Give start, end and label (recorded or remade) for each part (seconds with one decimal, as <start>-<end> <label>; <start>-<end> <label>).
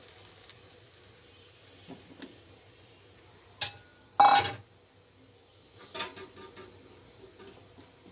0.0-8.1 recorded